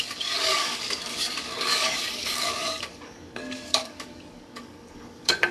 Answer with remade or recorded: remade